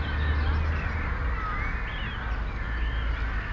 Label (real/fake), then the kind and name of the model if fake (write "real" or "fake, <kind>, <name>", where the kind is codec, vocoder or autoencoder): real